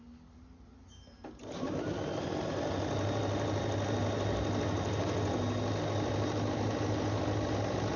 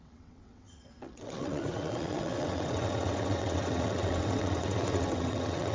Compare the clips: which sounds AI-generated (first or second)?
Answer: second